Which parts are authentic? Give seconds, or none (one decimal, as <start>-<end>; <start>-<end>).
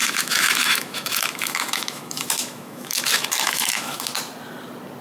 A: 4.1-5.0